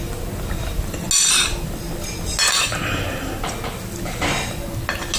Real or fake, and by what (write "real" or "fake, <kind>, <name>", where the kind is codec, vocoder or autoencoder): real